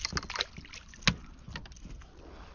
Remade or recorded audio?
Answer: recorded